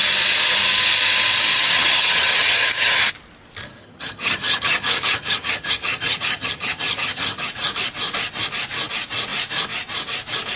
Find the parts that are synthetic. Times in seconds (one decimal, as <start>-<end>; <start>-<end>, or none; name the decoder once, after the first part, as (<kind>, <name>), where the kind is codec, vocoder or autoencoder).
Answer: 1.5-3.0 (vocoder, HiFi-GAN); 3.8-7.5